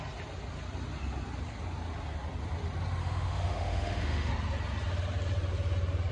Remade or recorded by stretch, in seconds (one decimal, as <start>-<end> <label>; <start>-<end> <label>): 0.0-3.0 recorded; 3.0-4.3 remade; 4.3-6.1 recorded